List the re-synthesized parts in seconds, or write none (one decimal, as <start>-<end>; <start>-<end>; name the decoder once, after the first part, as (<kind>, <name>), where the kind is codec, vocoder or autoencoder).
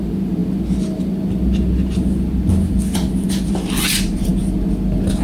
none